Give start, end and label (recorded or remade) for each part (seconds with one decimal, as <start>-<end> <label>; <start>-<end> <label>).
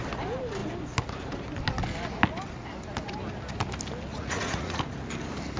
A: 0.0-4.1 recorded; 4.1-4.8 remade; 4.8-5.6 recorded